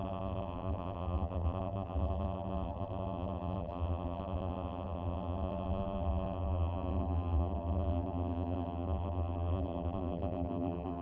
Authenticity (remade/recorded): remade